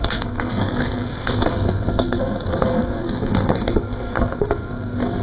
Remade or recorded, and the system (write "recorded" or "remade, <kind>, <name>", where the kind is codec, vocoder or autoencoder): remade, codec, SNAC